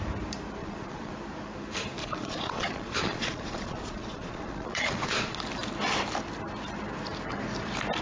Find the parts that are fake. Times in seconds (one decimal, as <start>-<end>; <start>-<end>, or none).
0.6-1.1; 2.0-5.4